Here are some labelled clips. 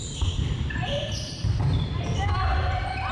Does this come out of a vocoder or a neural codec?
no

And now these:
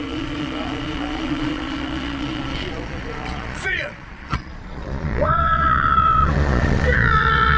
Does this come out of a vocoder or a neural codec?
yes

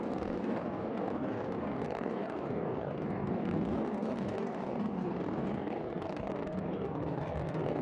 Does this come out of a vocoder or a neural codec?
yes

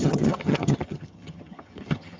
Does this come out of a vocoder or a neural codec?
yes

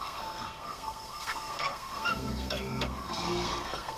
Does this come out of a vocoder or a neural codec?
yes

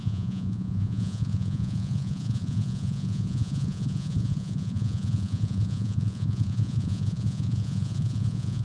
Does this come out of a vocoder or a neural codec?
yes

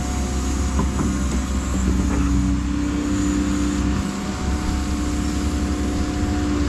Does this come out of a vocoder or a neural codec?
no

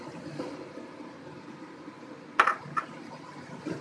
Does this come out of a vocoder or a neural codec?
no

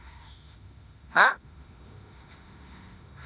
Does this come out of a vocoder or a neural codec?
yes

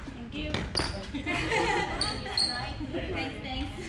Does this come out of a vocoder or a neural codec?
no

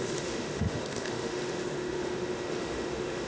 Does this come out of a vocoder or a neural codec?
yes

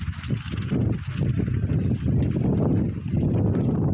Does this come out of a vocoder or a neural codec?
no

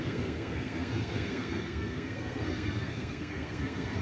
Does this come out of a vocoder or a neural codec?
yes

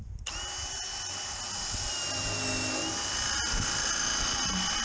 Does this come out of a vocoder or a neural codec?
no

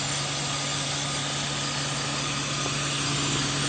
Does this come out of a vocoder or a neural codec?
no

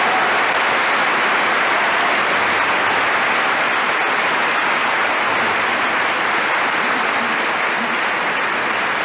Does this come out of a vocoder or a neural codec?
no